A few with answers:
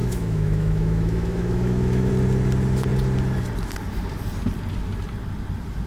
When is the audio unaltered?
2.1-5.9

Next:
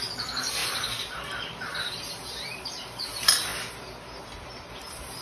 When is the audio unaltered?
3.5-4.7

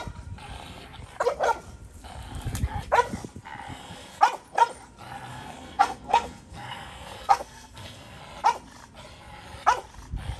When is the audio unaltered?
0.0-3.7; 4.2-5.3; 8.2-10.4

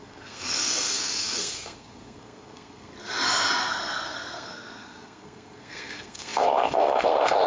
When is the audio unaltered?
2.9-3.6

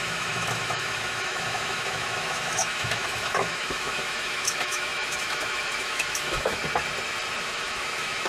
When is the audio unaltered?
6.6-7.4

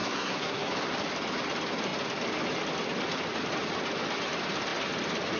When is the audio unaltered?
0.7-5.4

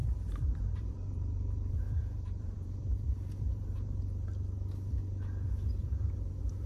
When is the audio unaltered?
4.0-5.8

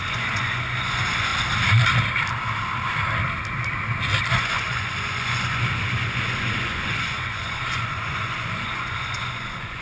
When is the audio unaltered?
1.3-4.3